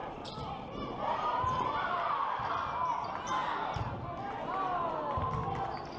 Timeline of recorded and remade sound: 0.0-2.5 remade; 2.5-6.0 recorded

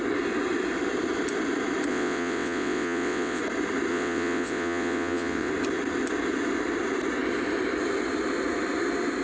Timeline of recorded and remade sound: 0.0-1.9 recorded; 1.9-3.4 remade; 3.4-3.9 recorded; 3.9-5.5 remade; 5.5-9.2 recorded

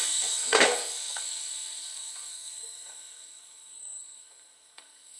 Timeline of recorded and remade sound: 0.0-5.2 remade

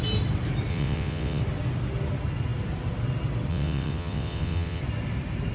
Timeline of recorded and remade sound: 0.0-0.7 recorded; 0.7-1.4 remade; 1.4-3.5 recorded; 3.5-4.8 remade; 4.8-5.5 recorded

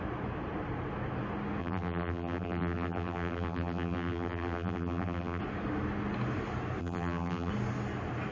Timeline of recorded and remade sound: 0.0-1.6 recorded; 1.6-5.4 remade; 5.4-6.8 recorded; 6.8-7.5 remade; 7.5-8.3 recorded

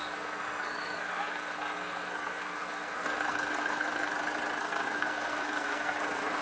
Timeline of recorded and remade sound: 0.0-4.1 remade; 4.1-4.6 recorded; 4.6-6.4 remade